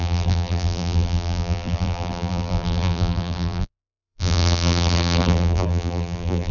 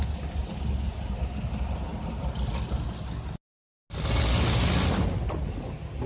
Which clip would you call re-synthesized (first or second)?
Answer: first